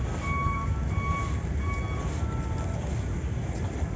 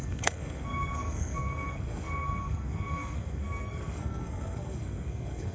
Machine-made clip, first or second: second